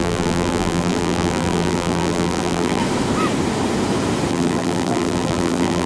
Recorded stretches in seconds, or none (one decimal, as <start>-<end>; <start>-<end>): 2.8-4.3